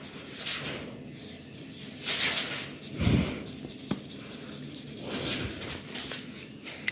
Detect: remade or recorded recorded